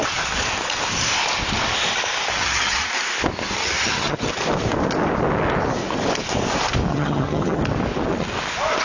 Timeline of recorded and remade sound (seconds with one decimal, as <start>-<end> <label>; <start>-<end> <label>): 0.0-2.3 recorded; 2.3-2.9 remade; 2.9-3.6 recorded; 3.6-4.2 remade; 4.2-6.9 recorded; 6.9-7.6 remade; 7.6-8.8 recorded